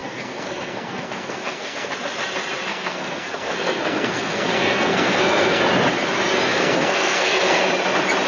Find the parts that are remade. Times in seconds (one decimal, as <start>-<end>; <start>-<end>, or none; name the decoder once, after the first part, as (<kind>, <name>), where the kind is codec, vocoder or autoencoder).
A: 0.0-1.9 (codec, SNAC); 2.7-5.6; 6.5-7.6